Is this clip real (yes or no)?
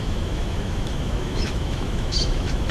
no